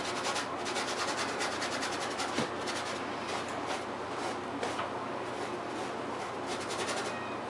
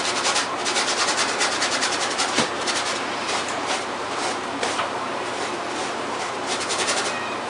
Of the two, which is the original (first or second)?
first